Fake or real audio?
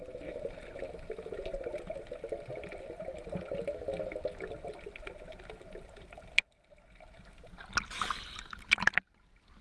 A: real